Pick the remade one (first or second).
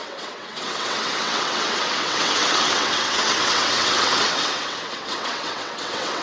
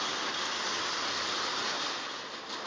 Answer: first